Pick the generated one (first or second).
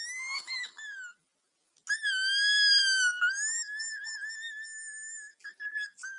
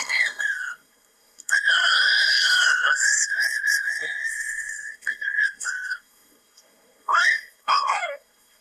second